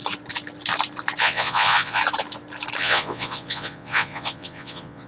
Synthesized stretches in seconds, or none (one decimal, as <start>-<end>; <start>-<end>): 1.2-2.0; 2.8-5.1